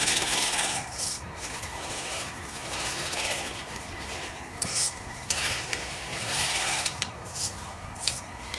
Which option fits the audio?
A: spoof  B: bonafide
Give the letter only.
A